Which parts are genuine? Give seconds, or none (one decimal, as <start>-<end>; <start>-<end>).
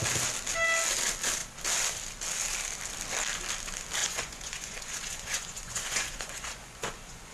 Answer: 0.0-4.0